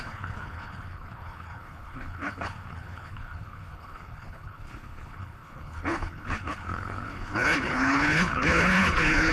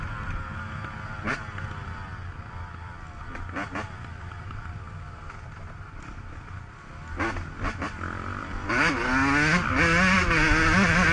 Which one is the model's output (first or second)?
first